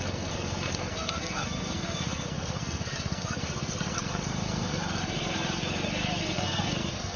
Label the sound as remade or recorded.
remade